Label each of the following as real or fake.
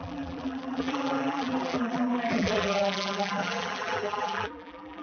fake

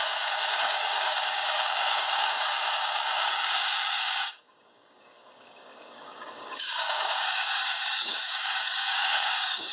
fake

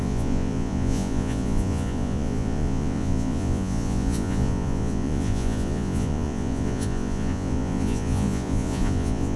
fake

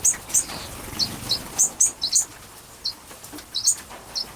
fake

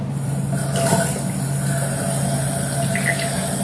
real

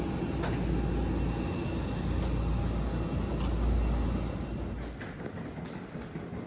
real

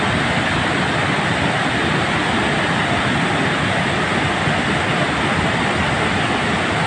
real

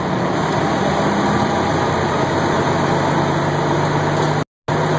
real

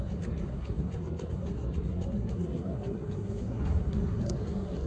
fake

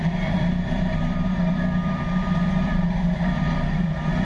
fake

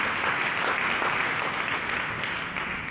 real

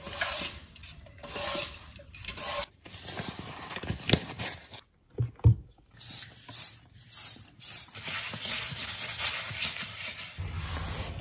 fake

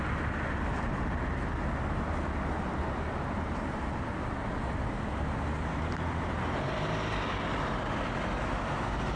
real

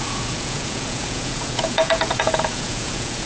fake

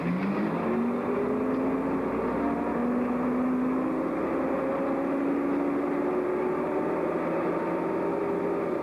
real